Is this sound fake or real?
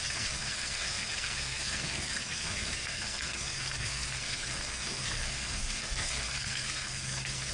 fake